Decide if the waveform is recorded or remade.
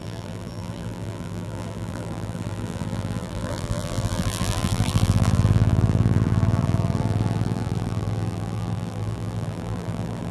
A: remade